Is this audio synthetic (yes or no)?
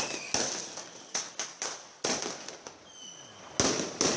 no